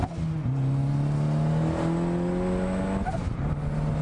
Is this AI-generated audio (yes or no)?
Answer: no